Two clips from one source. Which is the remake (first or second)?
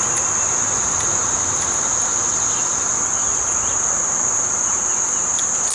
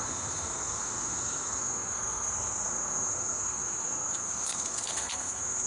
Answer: second